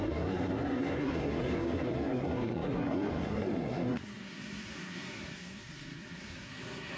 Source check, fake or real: fake